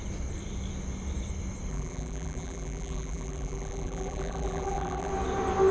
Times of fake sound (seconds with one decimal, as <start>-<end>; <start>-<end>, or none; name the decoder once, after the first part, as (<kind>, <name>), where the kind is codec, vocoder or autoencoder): 1.7-5.1 (vocoder, BigVGAN v2)